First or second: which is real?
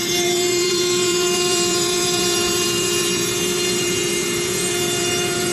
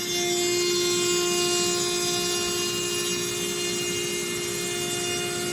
second